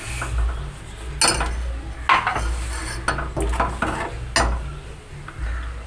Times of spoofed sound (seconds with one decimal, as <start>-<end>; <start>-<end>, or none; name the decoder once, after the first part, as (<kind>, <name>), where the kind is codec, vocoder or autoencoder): none